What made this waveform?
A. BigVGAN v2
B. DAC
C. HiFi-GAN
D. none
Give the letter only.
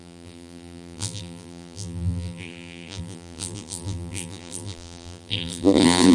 A